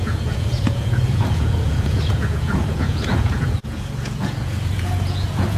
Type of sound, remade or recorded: remade